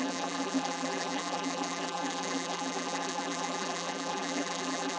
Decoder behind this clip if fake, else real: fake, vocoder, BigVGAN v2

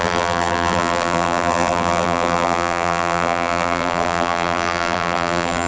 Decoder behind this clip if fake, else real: fake, vocoder, BigVGAN v2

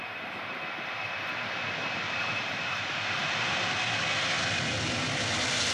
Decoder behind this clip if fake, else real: real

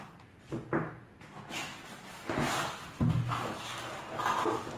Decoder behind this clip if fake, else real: fake, vocoder, BigVGAN v2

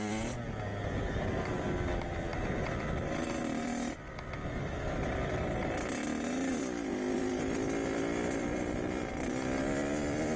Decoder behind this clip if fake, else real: real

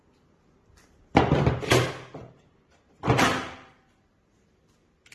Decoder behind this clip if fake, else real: real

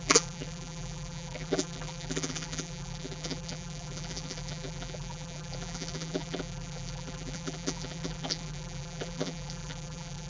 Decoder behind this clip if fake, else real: fake, vocoder, BigVGAN v2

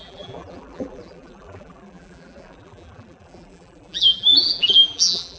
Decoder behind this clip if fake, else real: fake, vocoder, BigVGAN v2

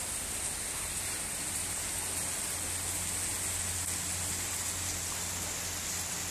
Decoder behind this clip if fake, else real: real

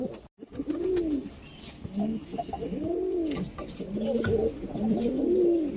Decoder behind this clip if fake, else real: real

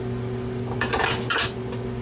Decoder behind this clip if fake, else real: real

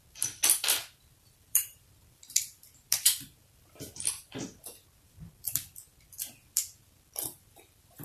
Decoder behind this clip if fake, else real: fake, vocoder, BigVGAN v2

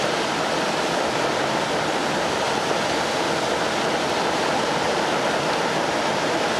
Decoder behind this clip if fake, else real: real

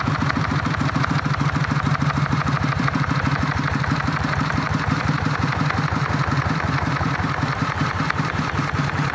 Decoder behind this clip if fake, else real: fake, vocoder, BigVGAN v2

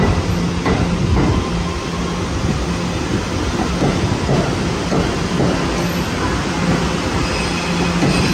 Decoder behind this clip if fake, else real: real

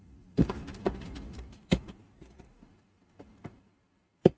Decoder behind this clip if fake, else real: fake, vocoder, BigVGAN v2